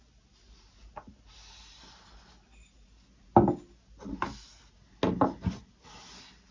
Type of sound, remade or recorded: recorded